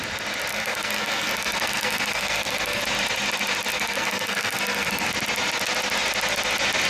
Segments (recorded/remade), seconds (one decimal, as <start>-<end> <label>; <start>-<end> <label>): 0.0-0.5 recorded; 0.5-2.8 remade; 2.8-3.7 recorded; 3.7-5.1 remade; 5.1-6.9 recorded